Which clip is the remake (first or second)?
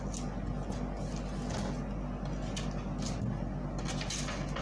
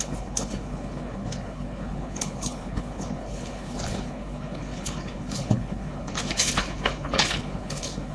second